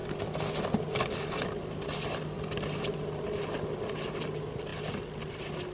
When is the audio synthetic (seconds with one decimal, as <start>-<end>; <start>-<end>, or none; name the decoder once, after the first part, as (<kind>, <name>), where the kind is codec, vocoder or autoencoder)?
none